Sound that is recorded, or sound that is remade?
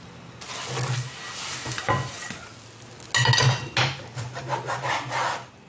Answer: recorded